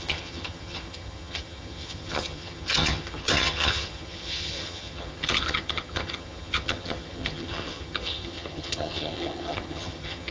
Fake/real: fake